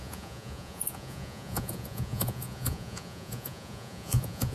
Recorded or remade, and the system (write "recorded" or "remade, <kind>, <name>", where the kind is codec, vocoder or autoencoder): remade, vocoder, Vocos